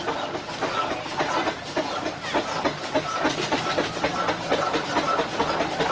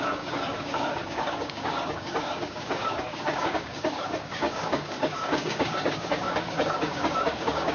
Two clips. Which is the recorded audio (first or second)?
first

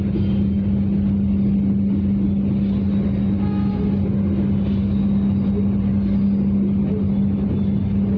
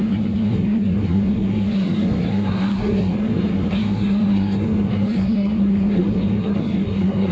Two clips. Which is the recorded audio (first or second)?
first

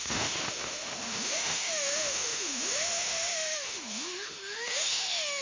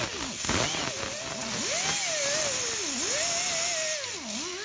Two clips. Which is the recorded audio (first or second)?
second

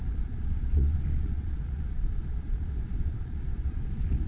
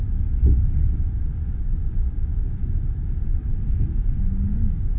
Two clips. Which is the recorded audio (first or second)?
second